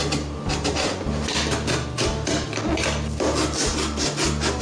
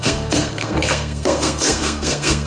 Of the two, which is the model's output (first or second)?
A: second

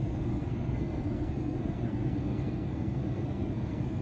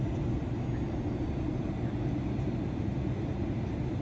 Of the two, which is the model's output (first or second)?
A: first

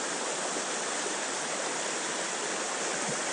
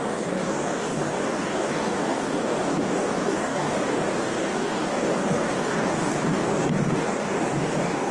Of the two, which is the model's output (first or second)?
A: second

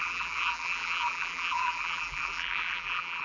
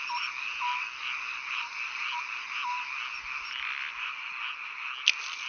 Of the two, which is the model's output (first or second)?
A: first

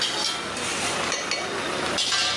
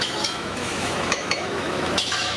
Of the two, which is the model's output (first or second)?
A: second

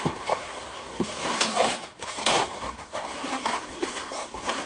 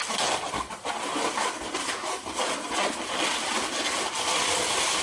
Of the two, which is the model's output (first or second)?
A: first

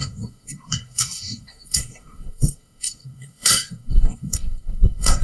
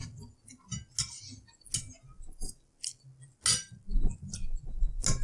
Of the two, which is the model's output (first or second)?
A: first